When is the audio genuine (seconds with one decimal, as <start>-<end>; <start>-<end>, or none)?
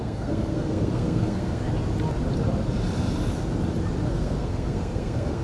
1.6-4.1